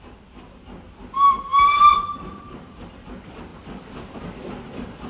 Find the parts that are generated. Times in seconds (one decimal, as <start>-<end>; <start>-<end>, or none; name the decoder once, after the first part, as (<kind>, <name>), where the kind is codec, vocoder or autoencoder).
none